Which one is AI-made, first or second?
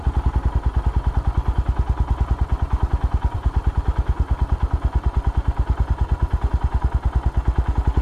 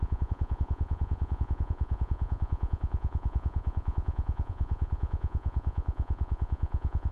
second